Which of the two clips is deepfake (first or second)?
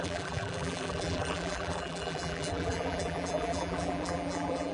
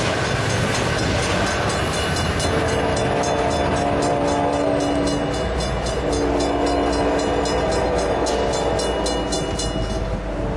first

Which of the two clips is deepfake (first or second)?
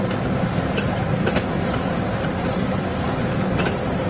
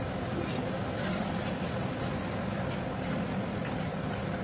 first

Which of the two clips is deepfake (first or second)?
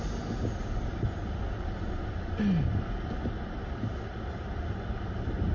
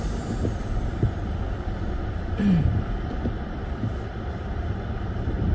second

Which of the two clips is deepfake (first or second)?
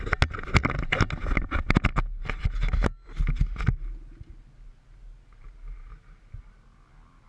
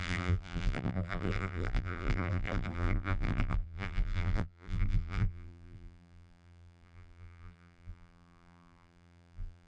second